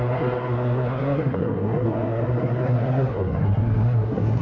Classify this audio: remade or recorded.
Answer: remade